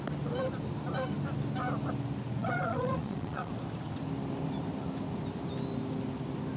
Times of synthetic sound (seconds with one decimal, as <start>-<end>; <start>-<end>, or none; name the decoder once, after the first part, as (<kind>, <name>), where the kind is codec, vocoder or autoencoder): 2.4-3.5 (vocoder, Vocos)